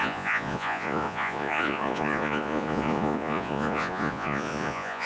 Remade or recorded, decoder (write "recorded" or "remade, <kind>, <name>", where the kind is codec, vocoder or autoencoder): remade, vocoder, Vocos